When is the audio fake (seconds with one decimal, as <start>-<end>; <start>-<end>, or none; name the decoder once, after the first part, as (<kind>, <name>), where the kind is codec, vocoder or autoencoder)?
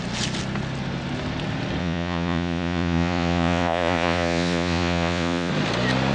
1.8-5.5 (vocoder, Vocos)